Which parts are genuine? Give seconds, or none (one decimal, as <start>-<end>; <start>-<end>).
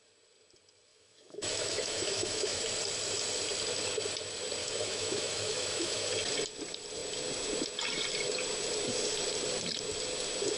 0.0-0.9; 2.6-4.6; 6.1-10.6